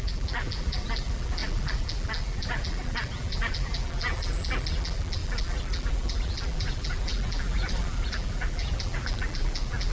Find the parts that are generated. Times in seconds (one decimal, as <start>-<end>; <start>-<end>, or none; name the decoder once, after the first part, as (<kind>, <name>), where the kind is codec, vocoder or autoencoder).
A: 0.0-9.9 (vocoder, BigVGAN v2)